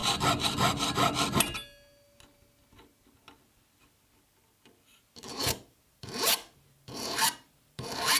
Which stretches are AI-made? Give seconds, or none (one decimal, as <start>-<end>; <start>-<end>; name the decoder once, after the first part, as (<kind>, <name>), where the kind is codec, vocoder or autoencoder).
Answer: 5.3-8.2 (vocoder, BigVGAN v2)